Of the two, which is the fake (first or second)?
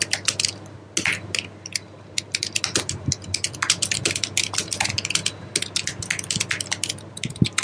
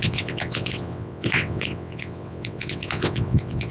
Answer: second